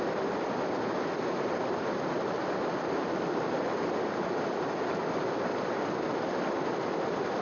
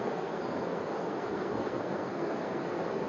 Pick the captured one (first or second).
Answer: first